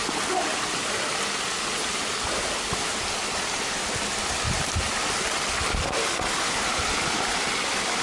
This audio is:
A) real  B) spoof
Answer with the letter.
A